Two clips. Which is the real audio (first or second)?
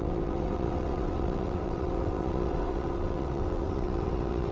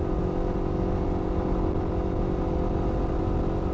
second